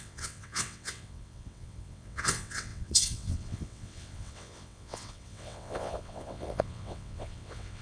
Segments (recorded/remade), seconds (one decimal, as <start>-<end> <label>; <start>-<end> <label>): 0.0-7.8 remade